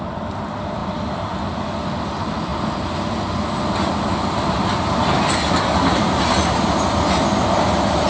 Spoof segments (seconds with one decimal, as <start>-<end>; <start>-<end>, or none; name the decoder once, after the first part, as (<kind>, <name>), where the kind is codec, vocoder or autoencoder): none